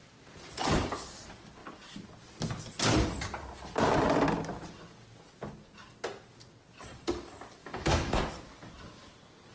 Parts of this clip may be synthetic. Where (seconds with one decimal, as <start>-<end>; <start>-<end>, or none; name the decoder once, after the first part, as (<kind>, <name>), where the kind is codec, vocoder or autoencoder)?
7.6-8.2 (autoencoder, DAC-VAE)